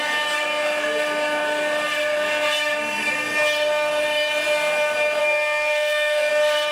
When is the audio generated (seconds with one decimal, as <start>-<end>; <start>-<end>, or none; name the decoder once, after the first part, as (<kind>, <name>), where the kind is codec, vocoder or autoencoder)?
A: 5.2-6.3 (codec, SNAC)